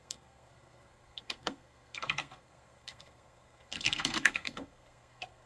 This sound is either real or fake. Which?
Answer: fake